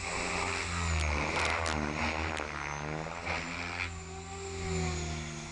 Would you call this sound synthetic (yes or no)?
no